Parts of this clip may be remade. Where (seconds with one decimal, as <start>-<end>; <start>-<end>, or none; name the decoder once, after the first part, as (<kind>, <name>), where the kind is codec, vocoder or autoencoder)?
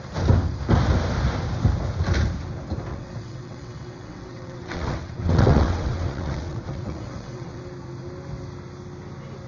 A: 2.9-7.6 (vocoder, WaveNeXt)